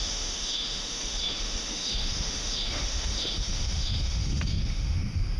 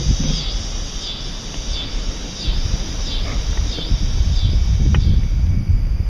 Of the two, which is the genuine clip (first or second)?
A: second